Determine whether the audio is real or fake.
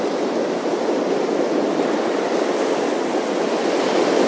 real